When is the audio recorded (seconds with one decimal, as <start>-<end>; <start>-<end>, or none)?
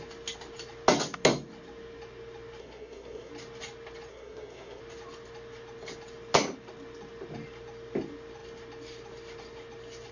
0.0-2.6; 3.3-4.1; 4.8-10.1